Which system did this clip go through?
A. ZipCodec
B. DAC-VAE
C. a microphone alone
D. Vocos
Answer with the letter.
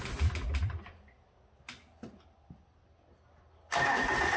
C